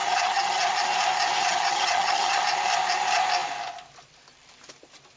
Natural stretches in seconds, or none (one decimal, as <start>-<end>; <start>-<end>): 0.7-1.4; 2.4-5.2